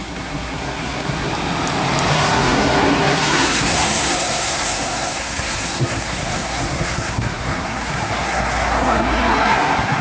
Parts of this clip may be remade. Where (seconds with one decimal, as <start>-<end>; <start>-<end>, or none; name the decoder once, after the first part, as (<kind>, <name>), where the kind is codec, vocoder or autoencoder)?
0.0-1.3 (codec, SNAC); 2.1-10.0

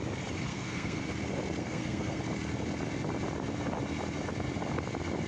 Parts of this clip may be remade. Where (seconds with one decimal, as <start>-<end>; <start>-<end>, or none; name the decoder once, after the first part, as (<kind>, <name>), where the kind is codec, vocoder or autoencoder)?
0.5-1.0 (codec, SNAC); 1.6-2.2